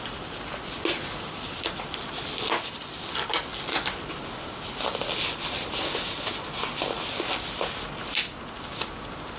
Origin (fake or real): real